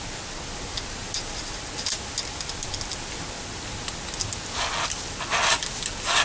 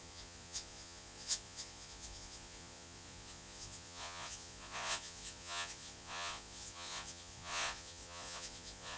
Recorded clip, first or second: first